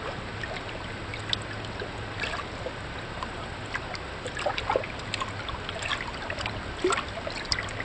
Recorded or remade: recorded